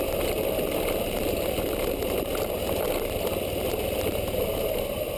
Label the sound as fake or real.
real